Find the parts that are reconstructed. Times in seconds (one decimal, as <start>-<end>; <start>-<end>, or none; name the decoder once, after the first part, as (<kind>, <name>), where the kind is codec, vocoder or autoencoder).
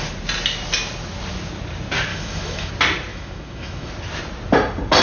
2.1-2.7 (autoencoder, DAC-VAE); 3.1-3.9